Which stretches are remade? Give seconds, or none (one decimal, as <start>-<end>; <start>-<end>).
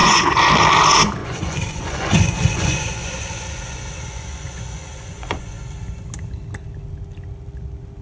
0.0-0.5; 1.2-5.6